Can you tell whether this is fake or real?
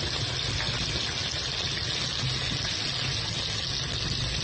real